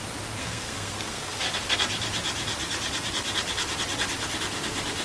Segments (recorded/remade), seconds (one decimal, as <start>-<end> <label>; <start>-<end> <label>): 0.0-0.4 recorded; 0.4-1.4 remade; 1.4-5.0 recorded